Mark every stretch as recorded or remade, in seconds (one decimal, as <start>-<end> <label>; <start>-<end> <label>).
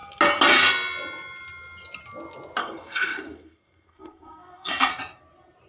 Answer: 0.0-2.6 recorded; 2.6-4.9 remade; 4.9-5.7 recorded